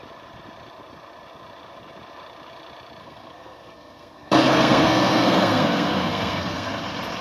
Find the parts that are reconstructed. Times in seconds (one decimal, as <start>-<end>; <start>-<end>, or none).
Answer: 3.0-6.7